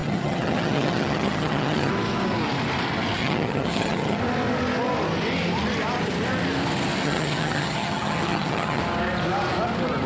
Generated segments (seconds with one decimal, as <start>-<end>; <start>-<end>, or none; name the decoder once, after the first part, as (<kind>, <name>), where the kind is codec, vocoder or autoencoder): 0.0-1.9 (vocoder, HiFi-GAN); 3.2-4.2; 7.0-8.8